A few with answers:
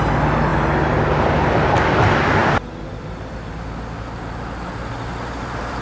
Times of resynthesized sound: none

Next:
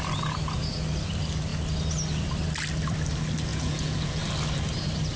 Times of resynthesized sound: 3.5-4.2

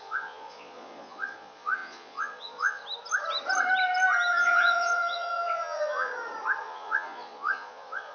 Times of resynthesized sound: 0.0-2.8; 4.3-6.1; 6.6-8.1

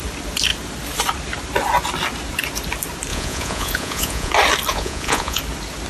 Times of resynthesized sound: 3.1-4.3; 4.7-5.4

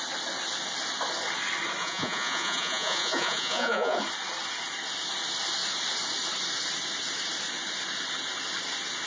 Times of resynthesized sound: 1.8-4.0

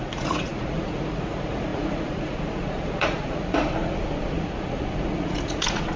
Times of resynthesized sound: 0.0-6.0